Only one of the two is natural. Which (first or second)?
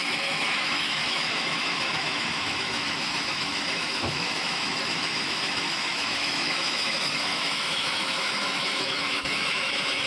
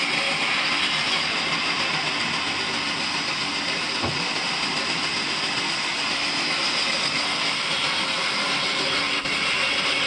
second